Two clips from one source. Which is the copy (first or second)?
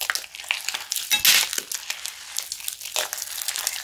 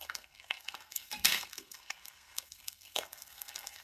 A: second